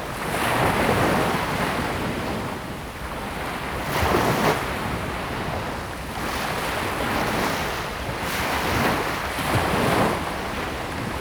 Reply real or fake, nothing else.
real